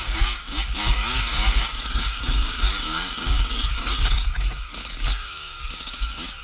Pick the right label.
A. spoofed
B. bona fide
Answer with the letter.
A